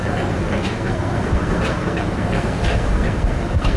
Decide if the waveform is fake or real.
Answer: fake